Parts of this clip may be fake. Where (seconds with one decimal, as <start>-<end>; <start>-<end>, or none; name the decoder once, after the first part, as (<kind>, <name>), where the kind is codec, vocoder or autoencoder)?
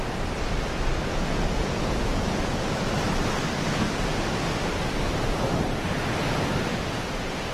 1.1-2.7 (vocoder, Vocos); 6.7-7.5